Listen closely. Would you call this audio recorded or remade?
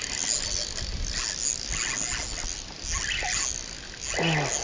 recorded